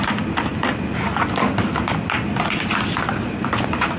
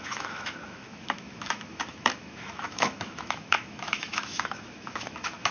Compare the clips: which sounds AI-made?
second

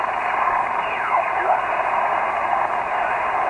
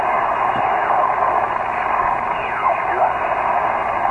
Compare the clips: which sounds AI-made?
first